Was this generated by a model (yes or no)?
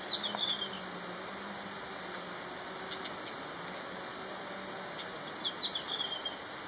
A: no